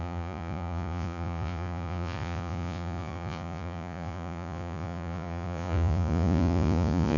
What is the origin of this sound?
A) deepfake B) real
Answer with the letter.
A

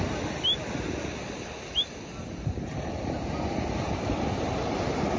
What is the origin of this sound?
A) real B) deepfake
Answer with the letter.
A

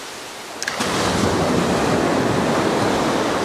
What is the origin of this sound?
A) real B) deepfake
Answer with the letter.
A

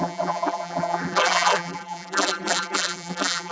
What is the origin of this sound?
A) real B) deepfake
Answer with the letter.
B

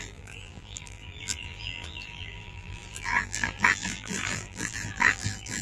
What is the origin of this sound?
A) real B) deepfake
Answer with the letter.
B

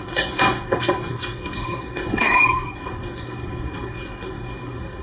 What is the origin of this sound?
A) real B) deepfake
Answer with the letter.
B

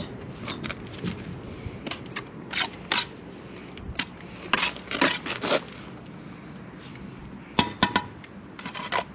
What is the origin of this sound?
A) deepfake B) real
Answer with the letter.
B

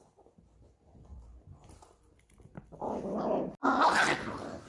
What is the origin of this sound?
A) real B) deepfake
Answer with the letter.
A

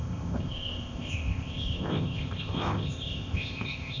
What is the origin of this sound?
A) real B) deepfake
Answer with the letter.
B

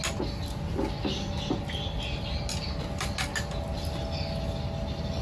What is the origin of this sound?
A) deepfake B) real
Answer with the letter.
B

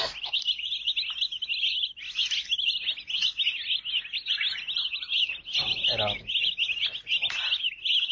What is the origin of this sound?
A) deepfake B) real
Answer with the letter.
B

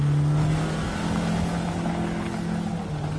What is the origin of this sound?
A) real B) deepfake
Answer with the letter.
A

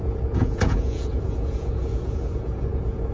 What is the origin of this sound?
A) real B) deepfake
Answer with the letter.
B